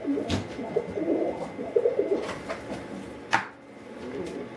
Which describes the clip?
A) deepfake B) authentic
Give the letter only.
B